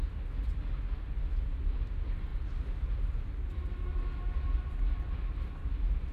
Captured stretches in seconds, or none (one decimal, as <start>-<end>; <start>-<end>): 0.0-6.1